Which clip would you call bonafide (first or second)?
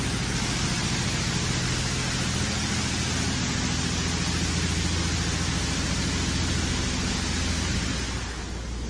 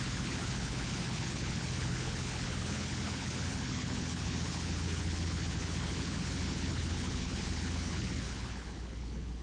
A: first